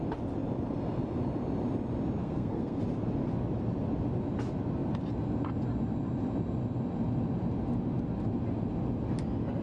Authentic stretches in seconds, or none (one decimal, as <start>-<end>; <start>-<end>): 0.0-2.2; 2.8-9.6

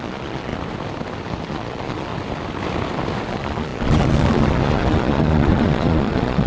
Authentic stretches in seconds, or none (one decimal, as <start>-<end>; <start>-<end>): 0.5-1.5; 2.1-3.3

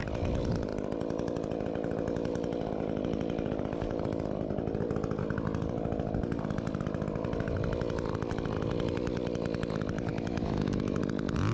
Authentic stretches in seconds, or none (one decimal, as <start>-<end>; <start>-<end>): 0.0-10.1; 11.0-11.5

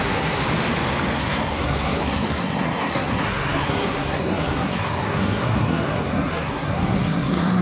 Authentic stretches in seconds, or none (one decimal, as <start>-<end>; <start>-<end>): 0.4-1.2

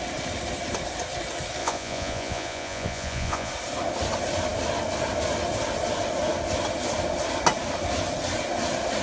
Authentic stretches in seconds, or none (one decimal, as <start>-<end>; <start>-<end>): 0.0-1.6; 3.5-9.0

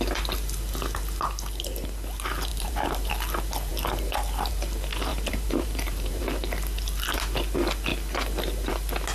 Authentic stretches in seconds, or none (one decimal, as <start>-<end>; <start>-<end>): 0.0-2.5; 3.1-5.1; 6.2-9.1

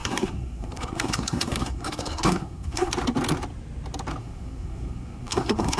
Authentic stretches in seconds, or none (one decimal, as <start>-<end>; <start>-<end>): 2.9-4.2

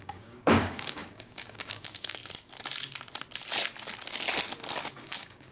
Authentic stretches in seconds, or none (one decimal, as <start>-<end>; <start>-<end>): 2.2-4.8